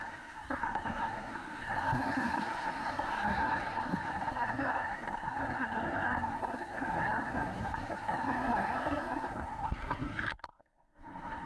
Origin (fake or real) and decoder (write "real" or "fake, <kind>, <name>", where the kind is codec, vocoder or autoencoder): fake, codec, SNAC